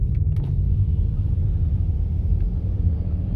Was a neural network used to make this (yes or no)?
yes